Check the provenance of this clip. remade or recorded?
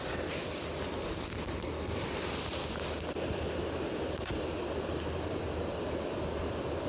recorded